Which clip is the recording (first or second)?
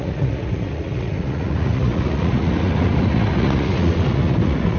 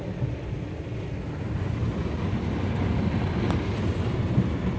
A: second